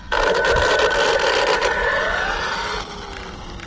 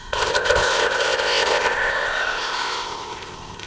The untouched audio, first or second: first